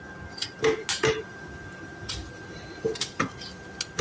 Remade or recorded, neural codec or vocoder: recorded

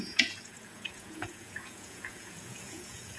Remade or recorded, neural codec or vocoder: remade, vocoder, Vocos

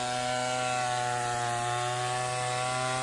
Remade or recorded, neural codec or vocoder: recorded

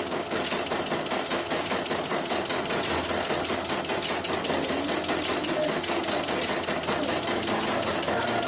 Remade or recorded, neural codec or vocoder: recorded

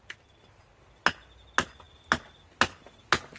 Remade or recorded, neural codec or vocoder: recorded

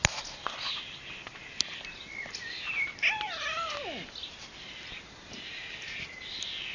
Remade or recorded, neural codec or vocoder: recorded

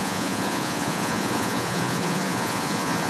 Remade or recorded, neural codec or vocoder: remade, vocoder, Vocos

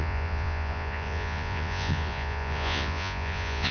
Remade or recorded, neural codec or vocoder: remade, vocoder, Vocos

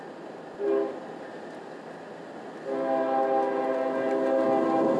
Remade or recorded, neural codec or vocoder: recorded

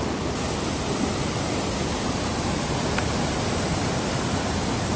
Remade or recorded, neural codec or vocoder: recorded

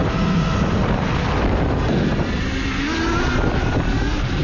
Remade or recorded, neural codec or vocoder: recorded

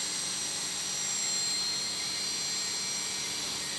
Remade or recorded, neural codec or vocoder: recorded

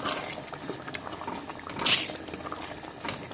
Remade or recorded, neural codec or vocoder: recorded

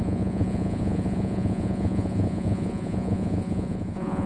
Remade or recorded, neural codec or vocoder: remade, vocoder, Vocos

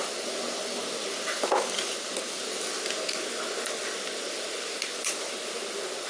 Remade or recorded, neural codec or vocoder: recorded